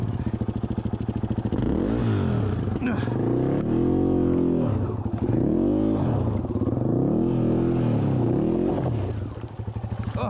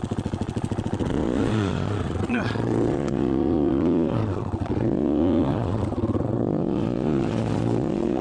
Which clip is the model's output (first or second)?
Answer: second